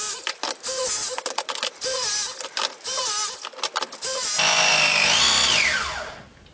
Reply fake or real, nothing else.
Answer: real